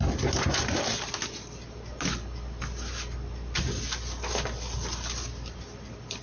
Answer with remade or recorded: recorded